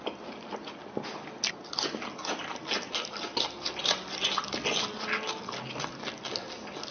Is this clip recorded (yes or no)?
yes